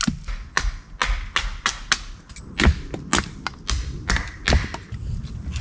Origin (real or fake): real